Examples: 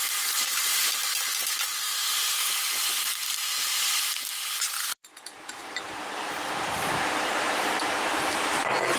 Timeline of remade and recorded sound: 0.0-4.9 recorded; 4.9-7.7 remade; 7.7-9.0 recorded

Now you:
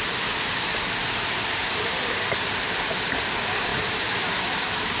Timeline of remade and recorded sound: 0.0-1.6 recorded; 1.6-2.9 remade; 2.9-5.0 recorded

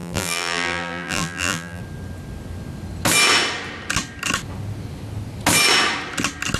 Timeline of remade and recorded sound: 0.0-1.8 remade; 1.8-6.6 recorded

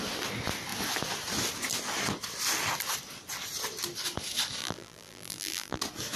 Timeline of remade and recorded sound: 0.0-4.6 recorded; 4.6-5.8 remade; 5.8-6.2 recorded

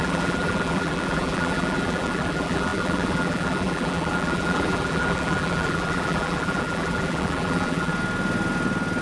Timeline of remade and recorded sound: 0.0-7.9 remade; 7.9-9.0 recorded

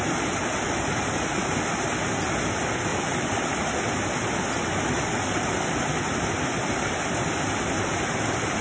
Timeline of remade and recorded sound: 0.0-2.9 recorded; 2.9-7.6 remade; 7.6-8.6 recorded

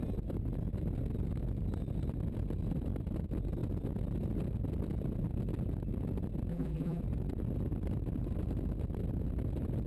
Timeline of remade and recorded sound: 0.0-6.5 recorded; 6.5-7.0 remade; 7.0-9.9 recorded